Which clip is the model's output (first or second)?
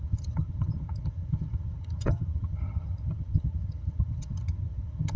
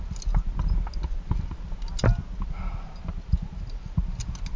first